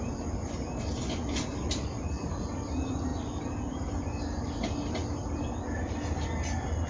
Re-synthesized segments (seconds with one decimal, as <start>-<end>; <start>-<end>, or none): 1.5-2.3